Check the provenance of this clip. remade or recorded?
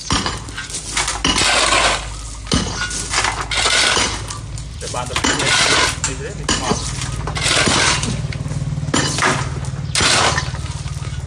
recorded